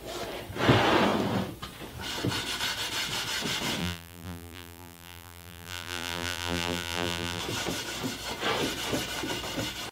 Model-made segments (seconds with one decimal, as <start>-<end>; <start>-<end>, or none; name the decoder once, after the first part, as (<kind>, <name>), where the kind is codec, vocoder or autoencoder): 3.8-7.4 (vocoder, BigVGAN v2)